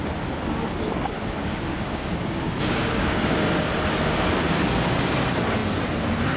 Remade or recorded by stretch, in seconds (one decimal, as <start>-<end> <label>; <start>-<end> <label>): 0.0-1.4 recorded; 1.4-3.7 remade; 3.7-6.4 recorded